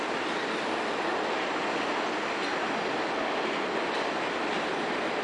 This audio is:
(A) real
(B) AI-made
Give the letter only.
A